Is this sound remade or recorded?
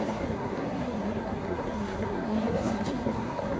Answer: remade